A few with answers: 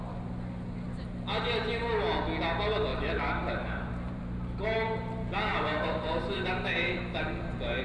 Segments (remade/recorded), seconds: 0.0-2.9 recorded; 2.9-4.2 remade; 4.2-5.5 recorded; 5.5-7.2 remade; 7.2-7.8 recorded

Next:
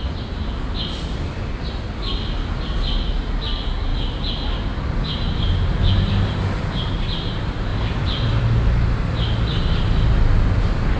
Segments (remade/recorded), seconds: 0.0-11.0 recorded

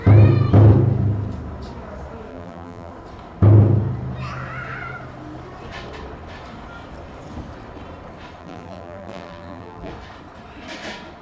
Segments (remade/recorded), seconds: 0.0-2.3 recorded; 2.3-2.9 remade; 2.9-8.4 recorded; 8.4-9.9 remade; 9.9-11.2 recorded

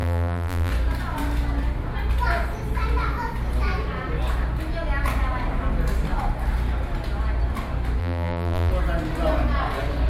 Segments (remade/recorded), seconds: 0.0-0.7 remade; 0.7-8.0 recorded; 8.0-8.7 remade; 8.7-10.1 recorded

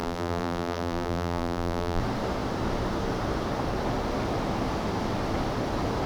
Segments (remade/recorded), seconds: 0.0-2.0 remade; 2.0-6.1 recorded

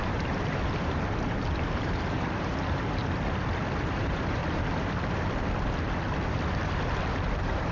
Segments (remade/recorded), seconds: 0.0-3.0 remade; 3.0-3.8 recorded; 3.8-4.4 remade; 4.4-7.1 recorded; 7.1-7.7 remade

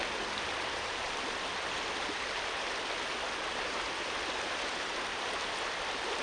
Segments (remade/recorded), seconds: 0.0-3.7 recorded; 3.7-6.2 remade

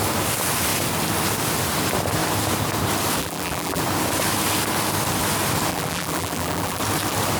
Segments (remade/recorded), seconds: 0.0-3.2 recorded; 3.2-3.8 remade; 3.8-5.7 recorded; 5.7-6.8 remade; 6.8-7.4 recorded